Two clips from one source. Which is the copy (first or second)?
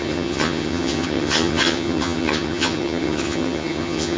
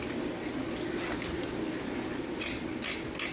first